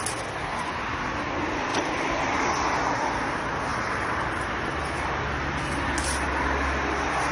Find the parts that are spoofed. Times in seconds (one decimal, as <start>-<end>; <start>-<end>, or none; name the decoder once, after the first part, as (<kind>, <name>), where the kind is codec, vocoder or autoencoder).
1.7-2.5 (vocoder, BigVGAN v2); 3.7-5.2